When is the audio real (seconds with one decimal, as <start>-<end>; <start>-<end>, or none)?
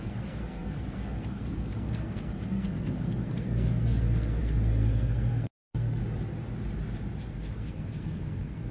6.0-7.3